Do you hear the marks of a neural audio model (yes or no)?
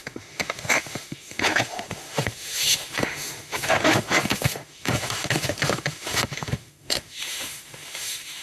yes